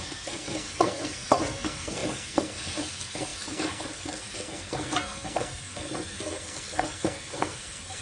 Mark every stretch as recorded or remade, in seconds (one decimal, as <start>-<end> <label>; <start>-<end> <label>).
0.0-8.0 remade